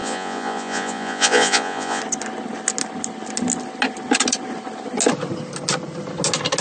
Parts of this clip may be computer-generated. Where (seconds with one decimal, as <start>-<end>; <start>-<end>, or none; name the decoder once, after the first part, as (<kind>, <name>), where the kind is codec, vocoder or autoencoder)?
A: 0.0-2.0 (vocoder, Vocos)